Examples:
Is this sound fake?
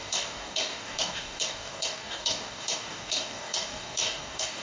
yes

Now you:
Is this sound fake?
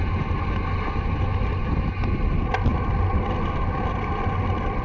no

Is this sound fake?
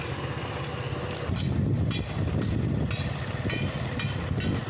no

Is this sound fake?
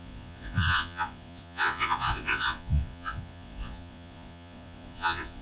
yes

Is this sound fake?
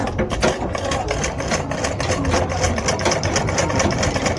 yes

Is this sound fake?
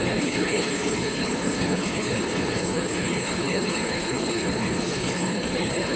yes